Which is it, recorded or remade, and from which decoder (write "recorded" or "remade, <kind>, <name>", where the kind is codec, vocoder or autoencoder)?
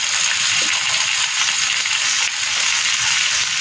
recorded